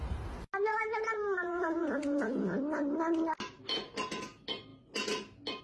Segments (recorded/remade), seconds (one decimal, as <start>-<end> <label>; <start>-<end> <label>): 0.0-0.7 recorded; 0.7-2.6 remade; 2.6-5.6 recorded